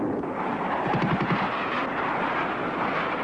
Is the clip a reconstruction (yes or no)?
no